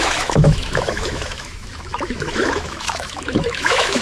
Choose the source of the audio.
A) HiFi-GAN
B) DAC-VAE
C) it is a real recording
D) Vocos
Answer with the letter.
B